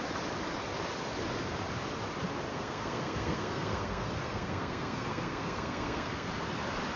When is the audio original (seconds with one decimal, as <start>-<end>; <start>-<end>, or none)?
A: 0.0-2.5; 6.3-7.0

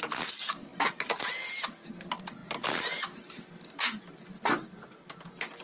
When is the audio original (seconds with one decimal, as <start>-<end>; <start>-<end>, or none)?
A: 0.0-5.6

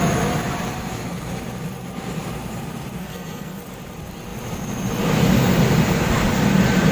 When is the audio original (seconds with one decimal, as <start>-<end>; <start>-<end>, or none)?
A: 0.0-3.0; 3.6-6.9

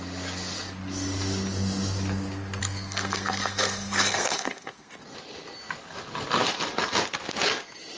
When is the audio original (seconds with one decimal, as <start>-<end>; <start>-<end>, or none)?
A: 0.0-2.6; 4.9-8.0

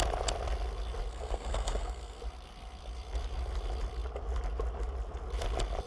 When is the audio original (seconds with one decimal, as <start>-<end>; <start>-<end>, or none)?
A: 0.0-1.1; 2.2-5.9